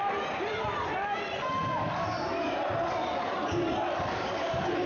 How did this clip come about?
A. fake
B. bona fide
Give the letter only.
B